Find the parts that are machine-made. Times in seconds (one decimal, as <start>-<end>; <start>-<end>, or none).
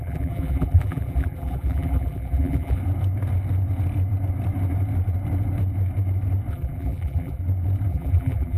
0.0-2.8; 6.5-7.4; 7.9-8.6